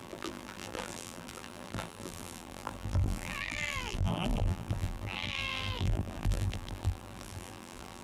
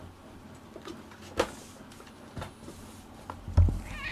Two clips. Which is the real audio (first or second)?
second